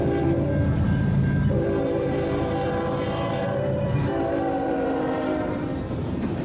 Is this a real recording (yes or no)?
no